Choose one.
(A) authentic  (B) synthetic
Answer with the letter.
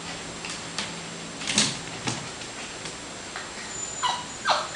A